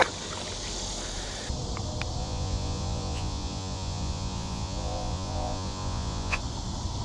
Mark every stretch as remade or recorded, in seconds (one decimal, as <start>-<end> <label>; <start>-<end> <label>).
0.0-2.2 recorded; 2.2-6.4 remade; 6.4-7.0 recorded

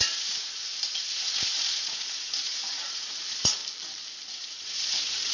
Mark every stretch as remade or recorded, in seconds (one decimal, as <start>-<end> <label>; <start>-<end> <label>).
0.0-3.6 remade; 3.6-4.3 recorded; 4.3-5.3 remade

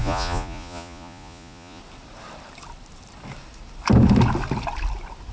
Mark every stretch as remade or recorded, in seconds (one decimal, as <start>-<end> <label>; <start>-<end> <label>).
0.0-1.8 remade; 1.8-5.3 recorded

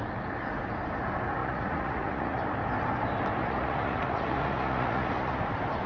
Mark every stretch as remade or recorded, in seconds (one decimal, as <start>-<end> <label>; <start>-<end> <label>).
0.0-1.4 recorded; 1.4-2.4 remade; 2.4-3.4 recorded; 3.4-5.4 remade; 5.4-5.9 recorded